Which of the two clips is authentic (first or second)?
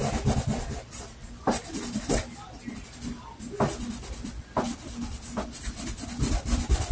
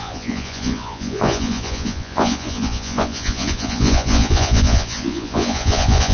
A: first